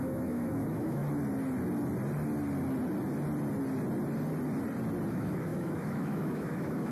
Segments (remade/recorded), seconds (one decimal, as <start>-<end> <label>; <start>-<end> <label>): 0.0-1.0 remade; 1.0-5.1 recorded; 5.1-6.9 remade